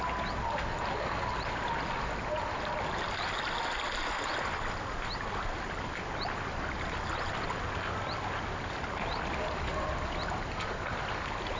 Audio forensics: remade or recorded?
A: recorded